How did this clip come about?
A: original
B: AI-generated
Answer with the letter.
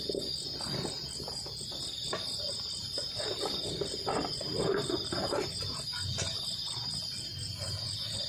A